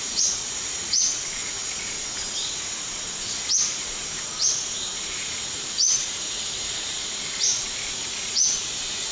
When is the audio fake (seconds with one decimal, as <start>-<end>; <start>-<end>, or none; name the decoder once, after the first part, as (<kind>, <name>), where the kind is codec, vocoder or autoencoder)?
0.0-9.1 (vocoder, Vocos)